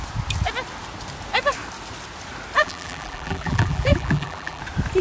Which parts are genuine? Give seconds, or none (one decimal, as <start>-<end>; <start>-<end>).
0.0-2.6; 4.6-5.0